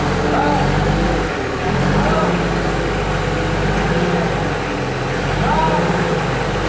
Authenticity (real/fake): real